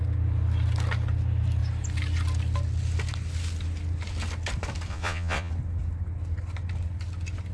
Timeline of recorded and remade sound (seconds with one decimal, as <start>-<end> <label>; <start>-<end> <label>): 0.0-4.9 recorded; 4.9-5.5 remade; 5.5-7.5 recorded